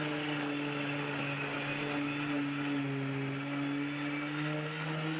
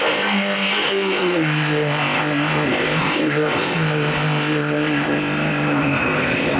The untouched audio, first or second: first